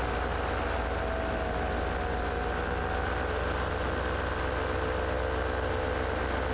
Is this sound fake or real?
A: real